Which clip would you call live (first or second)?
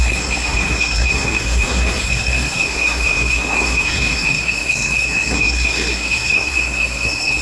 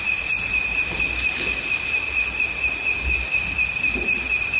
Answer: second